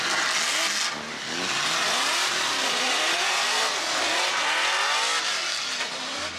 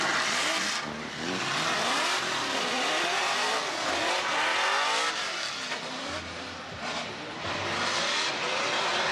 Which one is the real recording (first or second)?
first